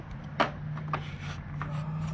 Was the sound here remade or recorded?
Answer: recorded